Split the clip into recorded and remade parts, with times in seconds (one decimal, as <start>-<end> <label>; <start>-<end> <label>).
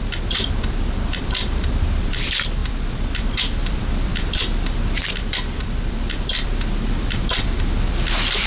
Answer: 0.0-8.5 remade